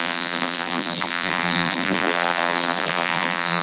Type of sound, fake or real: fake